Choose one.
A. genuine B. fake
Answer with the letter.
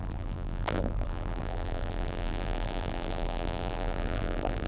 B